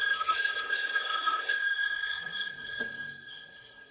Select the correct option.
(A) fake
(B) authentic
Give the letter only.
A